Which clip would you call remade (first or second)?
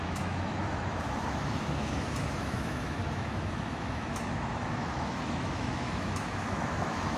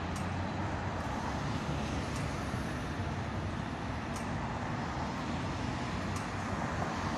first